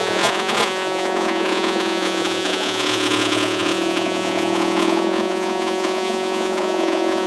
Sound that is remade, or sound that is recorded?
remade